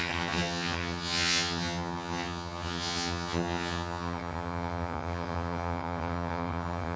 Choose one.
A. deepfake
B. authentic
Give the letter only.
A